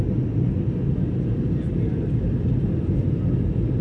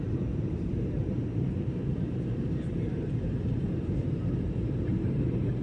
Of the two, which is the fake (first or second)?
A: second